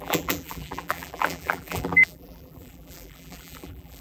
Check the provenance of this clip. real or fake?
fake